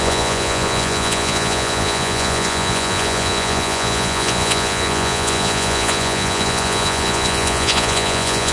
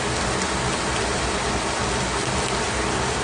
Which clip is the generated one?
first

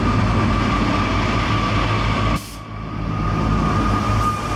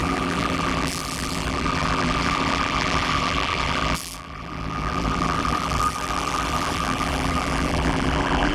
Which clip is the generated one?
second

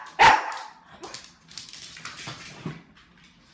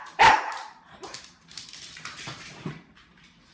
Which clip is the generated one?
second